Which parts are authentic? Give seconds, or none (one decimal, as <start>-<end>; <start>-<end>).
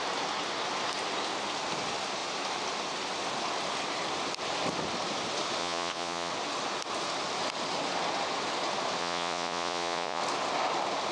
0.0-5.6; 6.3-9.0; 10.2-11.1